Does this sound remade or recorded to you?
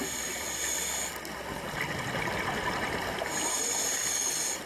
recorded